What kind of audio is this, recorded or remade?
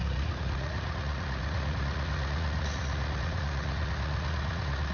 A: remade